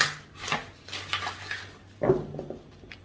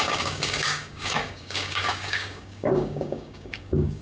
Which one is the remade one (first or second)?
second